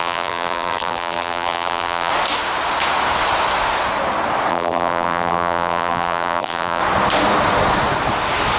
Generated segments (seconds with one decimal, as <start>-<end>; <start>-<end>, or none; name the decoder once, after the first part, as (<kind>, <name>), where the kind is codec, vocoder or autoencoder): 0.0-2.1 (vocoder, BigVGAN v2); 4.5-6.8